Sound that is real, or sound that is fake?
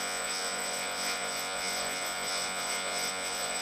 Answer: fake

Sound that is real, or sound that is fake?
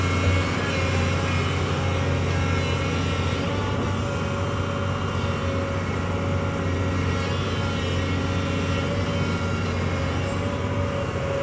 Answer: real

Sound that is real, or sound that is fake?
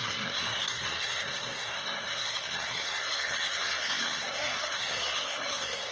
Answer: fake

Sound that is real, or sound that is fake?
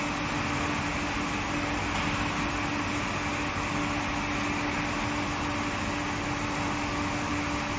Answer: real